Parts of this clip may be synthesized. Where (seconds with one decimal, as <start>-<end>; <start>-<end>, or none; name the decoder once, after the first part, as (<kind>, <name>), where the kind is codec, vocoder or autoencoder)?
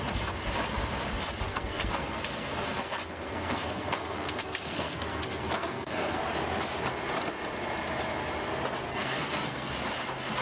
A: 1.5-6.2 (codec, SNAC); 8.9-9.7